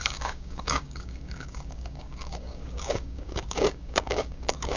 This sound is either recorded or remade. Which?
remade